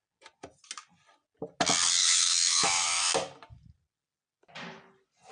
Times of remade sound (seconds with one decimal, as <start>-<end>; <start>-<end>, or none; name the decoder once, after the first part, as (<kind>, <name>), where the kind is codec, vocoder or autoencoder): 2.0-3.1 (autoencoder, DAC-VAE)